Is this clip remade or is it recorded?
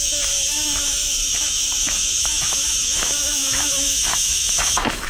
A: remade